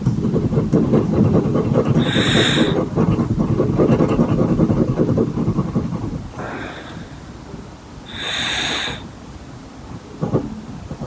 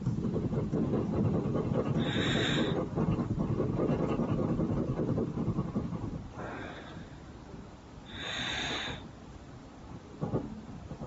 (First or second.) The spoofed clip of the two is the second